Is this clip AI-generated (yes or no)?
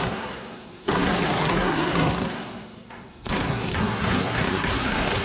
yes